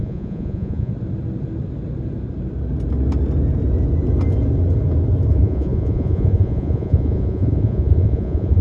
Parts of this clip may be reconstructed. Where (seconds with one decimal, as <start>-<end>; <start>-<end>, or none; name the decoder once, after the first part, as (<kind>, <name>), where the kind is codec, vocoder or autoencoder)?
0.0-0.9 (vocoder, Vocos); 5.3-8.6